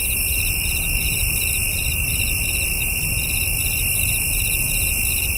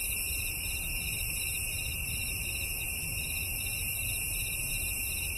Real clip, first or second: first